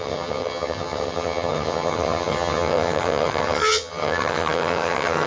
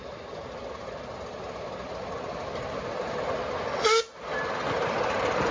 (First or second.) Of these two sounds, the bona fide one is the second